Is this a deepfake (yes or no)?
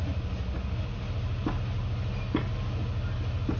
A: no